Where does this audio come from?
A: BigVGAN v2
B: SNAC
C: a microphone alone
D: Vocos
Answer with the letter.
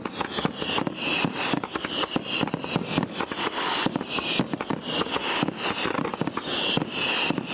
C